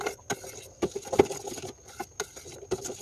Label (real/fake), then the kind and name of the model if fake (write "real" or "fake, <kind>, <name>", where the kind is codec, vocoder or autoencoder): real